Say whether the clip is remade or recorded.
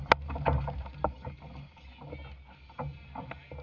recorded